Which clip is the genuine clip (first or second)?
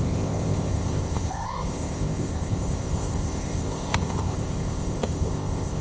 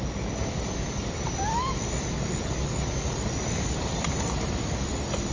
second